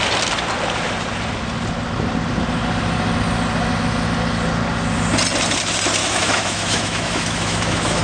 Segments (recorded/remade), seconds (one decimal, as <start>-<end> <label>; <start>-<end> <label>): 0.0-6.0 recorded; 6.0-8.0 remade